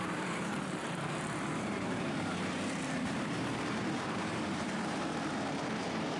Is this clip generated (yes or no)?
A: yes